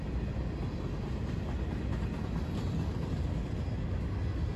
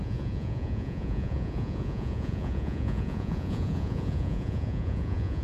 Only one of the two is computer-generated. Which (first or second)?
second